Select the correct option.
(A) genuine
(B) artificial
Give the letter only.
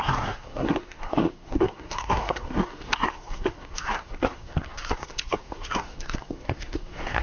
B